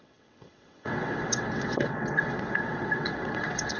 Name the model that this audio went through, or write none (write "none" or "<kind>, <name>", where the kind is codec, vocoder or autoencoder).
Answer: vocoder, WaveNeXt